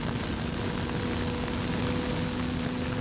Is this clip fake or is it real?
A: real